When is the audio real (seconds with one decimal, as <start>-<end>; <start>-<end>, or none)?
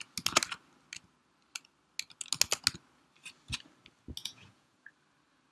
0.0-4.2; 4.9-5.5